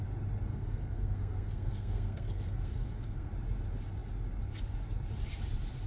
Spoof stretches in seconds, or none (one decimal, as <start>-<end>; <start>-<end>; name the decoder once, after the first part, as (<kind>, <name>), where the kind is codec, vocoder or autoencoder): 0.5-3.3 (codec, SNAC)